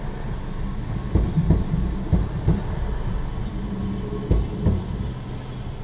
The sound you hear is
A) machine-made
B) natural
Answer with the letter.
B